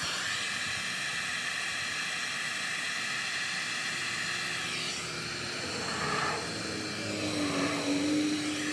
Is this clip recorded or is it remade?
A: recorded